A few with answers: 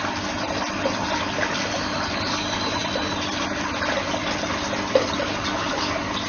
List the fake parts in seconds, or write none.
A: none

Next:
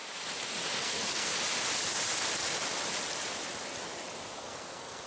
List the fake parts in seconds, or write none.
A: 0.8-1.3 (codec, SNAC); 4.4-5.1

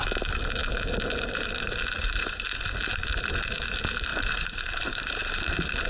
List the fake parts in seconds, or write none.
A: 4.1-5.3 (vocoder, BigVGAN v2)

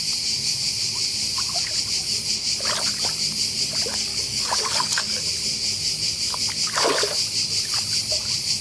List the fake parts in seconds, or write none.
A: 4.1-5.2 (codec, DAC)

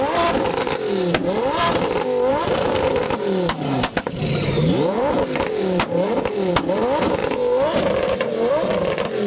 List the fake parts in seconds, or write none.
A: 2.3-6.5 (vocoder, BigVGAN v2); 7.2-8.5